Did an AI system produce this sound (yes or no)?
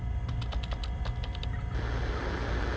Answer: no